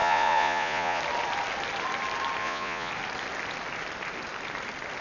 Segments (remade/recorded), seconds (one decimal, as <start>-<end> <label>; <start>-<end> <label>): 0.0-1.0 remade; 1.0-2.4 recorded; 2.4-2.9 remade; 2.9-5.0 recorded